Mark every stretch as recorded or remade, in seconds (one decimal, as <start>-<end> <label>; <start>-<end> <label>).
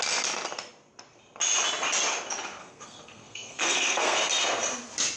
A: 0.0-2.6 recorded; 2.6-4.2 remade; 4.2-5.2 recorded